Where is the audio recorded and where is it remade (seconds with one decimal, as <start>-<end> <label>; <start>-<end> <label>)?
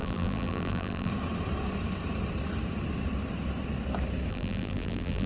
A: 0.0-1.1 remade; 1.1-4.3 recorded; 4.3-5.3 remade